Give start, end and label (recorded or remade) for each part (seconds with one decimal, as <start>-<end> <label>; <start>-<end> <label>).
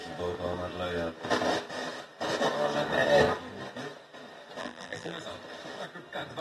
0.0-4.6 recorded; 4.6-5.2 remade; 5.2-6.4 recorded